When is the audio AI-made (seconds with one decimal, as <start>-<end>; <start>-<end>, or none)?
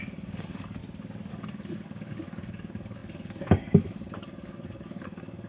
0.0-0.8; 1.3-5.5